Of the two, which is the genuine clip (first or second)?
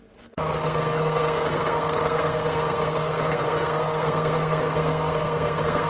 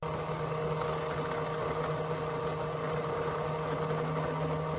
second